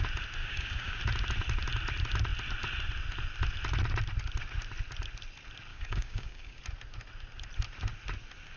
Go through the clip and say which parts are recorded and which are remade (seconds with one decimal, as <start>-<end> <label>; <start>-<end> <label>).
0.0-0.4 recorded; 0.4-1.0 remade; 1.0-5.7 recorded; 5.7-6.6 remade; 6.6-8.6 recorded